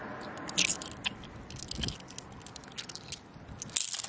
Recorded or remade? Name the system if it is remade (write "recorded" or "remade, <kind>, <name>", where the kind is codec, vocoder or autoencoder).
recorded